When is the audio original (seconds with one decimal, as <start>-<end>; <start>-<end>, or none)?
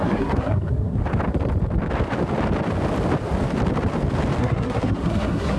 1.0-4.4